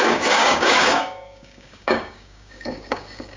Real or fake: fake